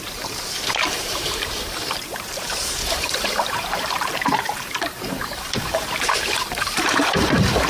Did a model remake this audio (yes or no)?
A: yes